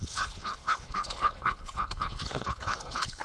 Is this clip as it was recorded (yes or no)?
no